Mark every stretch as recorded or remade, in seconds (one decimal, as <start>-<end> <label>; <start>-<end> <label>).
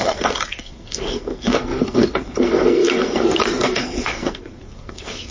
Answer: 0.0-5.3 remade